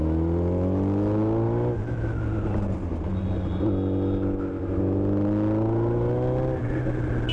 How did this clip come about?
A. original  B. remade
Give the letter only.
A